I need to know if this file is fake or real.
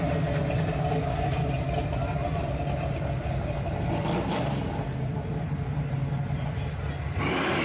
real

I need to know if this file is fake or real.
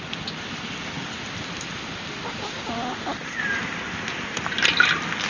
real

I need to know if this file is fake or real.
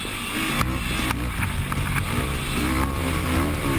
real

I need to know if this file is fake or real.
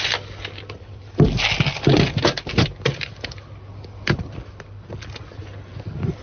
real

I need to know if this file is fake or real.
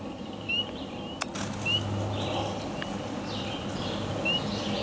real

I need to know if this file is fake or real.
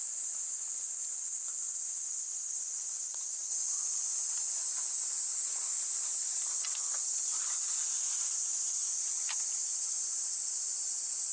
real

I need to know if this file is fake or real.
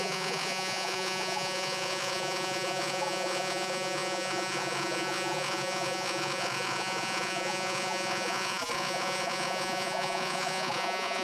fake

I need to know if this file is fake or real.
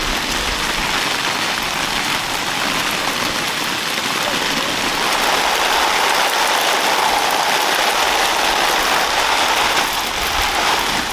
real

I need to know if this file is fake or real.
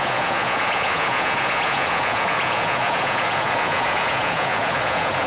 fake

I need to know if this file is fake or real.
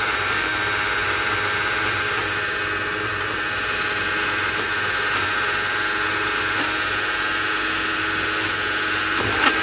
real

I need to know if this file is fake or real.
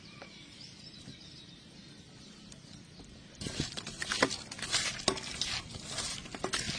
real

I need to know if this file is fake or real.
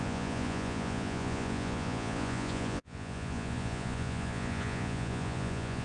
fake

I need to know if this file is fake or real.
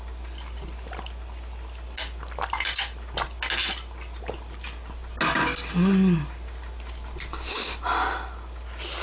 real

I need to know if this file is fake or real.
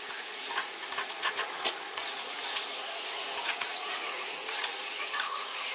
fake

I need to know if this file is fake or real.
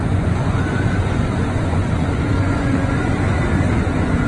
fake